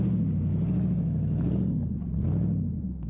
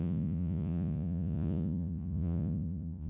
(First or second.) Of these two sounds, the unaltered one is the first